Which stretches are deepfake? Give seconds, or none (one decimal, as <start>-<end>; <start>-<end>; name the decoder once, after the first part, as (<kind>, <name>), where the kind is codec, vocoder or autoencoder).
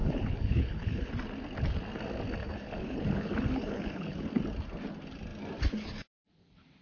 0.0-1.1 (codec, HILCodec); 2.4-4.4